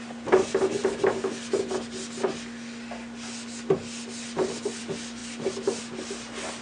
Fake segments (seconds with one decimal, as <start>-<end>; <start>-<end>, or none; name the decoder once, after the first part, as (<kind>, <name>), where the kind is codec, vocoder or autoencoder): none